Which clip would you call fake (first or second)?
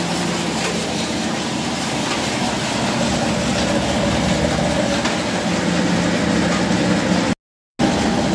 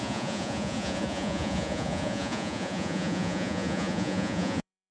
second